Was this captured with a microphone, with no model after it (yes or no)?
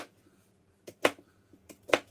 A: no